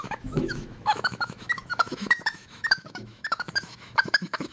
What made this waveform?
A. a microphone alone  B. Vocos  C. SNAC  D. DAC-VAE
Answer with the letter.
D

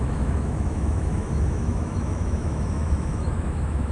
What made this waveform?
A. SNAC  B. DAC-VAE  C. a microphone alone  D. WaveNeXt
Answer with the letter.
B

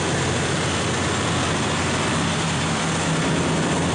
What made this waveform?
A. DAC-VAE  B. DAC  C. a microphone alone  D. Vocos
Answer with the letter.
C